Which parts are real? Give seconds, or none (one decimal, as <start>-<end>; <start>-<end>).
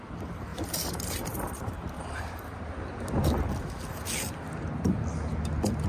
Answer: 0.0-0.5; 2.4-5.9